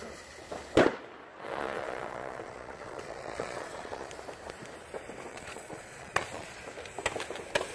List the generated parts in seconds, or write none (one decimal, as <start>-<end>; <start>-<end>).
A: 1.3-4.1; 5.3-6.6